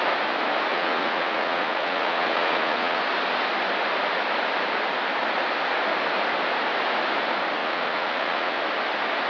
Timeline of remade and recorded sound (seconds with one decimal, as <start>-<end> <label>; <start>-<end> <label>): 0.0-0.7 recorded; 0.7-3.0 remade; 3.0-7.6 recorded; 7.6-8.6 remade; 8.6-9.3 recorded